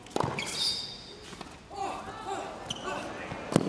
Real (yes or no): yes